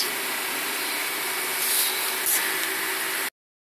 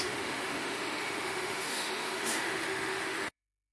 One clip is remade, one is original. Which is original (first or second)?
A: first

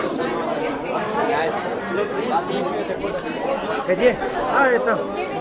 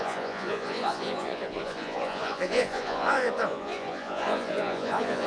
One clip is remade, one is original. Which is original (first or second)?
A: first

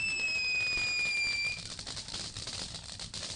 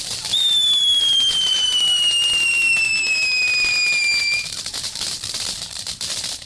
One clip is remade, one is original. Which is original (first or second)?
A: first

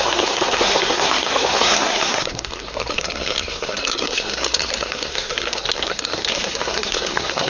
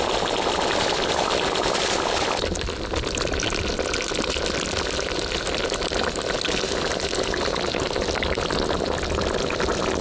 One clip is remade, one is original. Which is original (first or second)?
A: second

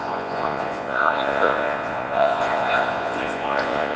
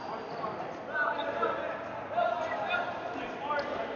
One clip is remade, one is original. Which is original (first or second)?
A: second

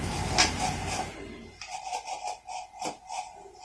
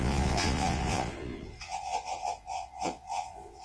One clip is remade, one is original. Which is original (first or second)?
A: first